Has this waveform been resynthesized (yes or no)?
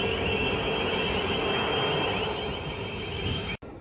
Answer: no